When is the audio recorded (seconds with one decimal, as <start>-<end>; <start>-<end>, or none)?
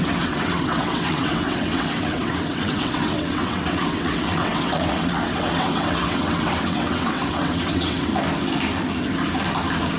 8.1-10.0